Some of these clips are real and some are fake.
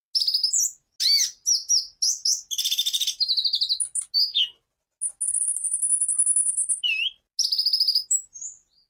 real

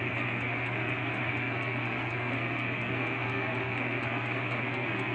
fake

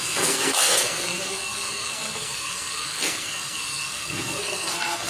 fake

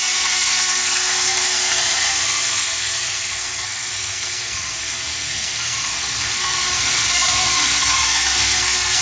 fake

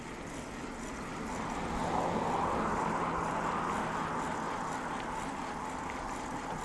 real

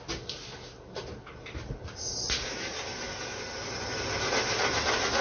real